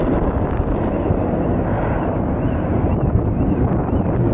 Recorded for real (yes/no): yes